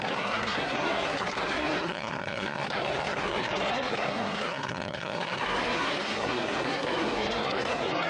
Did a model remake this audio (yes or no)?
yes